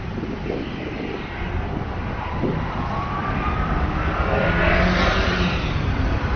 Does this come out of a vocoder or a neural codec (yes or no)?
yes